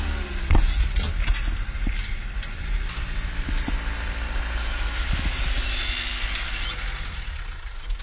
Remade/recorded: recorded